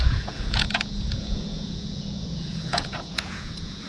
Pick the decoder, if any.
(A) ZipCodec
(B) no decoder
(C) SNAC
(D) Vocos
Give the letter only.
D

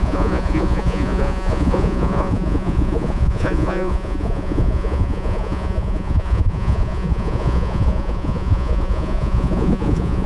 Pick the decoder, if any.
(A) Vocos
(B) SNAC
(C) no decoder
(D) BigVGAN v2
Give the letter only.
A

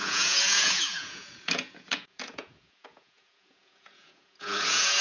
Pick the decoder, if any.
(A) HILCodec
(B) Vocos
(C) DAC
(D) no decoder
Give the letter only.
B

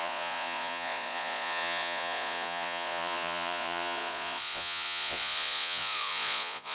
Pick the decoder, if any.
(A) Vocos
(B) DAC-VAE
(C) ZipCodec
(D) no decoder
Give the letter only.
A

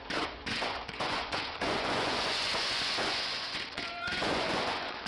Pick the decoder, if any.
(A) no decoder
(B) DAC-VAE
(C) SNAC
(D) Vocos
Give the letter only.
D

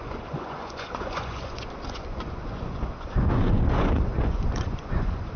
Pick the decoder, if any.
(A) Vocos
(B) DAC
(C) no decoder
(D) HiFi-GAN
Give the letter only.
A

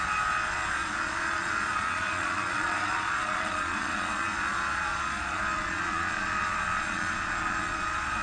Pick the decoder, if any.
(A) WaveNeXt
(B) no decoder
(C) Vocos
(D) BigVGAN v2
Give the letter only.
C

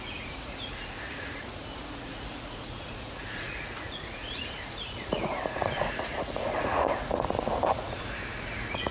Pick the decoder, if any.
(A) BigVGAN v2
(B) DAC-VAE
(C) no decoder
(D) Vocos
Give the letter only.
D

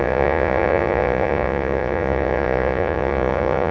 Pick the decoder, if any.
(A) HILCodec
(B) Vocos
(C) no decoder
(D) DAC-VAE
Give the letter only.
B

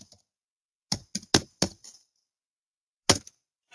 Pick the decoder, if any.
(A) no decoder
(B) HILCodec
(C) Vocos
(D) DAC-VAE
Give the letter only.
A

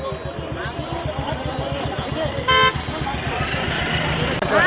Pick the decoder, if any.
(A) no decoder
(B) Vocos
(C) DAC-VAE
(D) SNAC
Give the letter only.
A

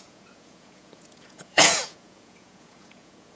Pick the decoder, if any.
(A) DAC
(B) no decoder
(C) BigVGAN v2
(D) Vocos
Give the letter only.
D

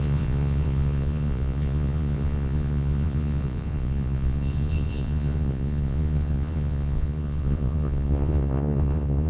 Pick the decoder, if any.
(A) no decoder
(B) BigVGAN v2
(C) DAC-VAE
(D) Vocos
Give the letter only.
D